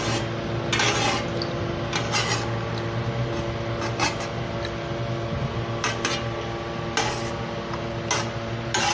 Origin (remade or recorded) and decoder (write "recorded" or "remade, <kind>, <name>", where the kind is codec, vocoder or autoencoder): recorded